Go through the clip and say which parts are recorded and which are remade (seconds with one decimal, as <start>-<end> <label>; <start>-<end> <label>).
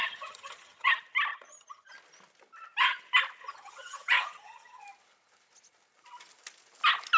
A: 0.0-0.9 remade; 0.9-1.3 recorded; 1.3-1.9 remade; 1.9-3.4 recorded; 3.4-4.8 remade; 4.8-7.2 recorded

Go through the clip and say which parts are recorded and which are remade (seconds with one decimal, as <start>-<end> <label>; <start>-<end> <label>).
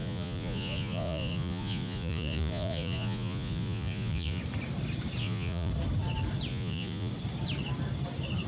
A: 0.0-4.4 remade; 4.4-5.2 recorded; 5.2-5.7 remade; 5.7-6.5 recorded; 6.5-7.1 remade; 7.1-8.5 recorded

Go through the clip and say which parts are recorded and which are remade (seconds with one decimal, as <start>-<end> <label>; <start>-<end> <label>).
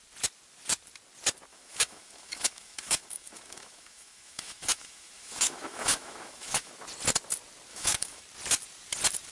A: 0.0-1.5 recorded; 1.5-6.7 remade; 6.7-7.7 recorded; 7.7-8.2 remade; 8.2-9.3 recorded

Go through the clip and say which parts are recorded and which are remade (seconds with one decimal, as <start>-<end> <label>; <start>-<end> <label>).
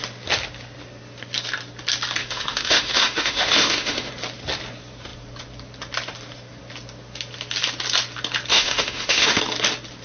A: 0.0-2.2 recorded; 2.2-4.1 remade; 4.1-8.5 recorded; 8.5-9.4 remade; 9.4-10.0 recorded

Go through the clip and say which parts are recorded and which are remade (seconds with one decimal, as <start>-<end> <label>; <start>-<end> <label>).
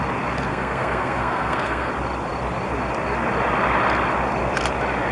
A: 0.0-0.5 recorded; 0.5-1.9 remade; 1.9-5.1 recorded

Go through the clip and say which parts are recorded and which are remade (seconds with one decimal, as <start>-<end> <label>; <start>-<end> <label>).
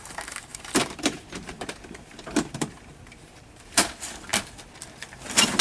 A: 0.0-0.5 recorded; 0.5-3.9 remade; 3.9-5.6 recorded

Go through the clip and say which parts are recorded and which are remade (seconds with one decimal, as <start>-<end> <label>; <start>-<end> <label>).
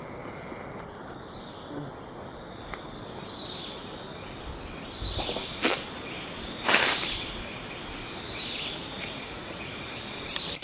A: 0.0-8.8 recorded; 8.8-9.6 remade; 9.6-10.6 recorded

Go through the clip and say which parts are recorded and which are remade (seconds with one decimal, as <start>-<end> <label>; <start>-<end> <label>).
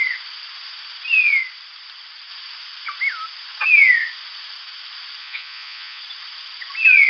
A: 0.0-5.2 recorded; 5.2-6.0 remade; 6.0-7.1 recorded